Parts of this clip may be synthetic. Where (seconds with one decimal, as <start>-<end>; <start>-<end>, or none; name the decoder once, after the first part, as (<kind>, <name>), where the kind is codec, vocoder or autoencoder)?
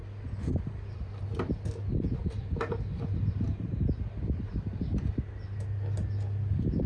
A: 0.0-1.2 (vocoder, BigVGAN v2); 2.2-5.1